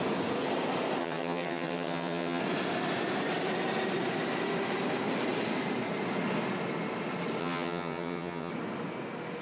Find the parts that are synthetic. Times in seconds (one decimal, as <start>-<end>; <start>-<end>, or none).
1.0-2.4; 7.4-8.5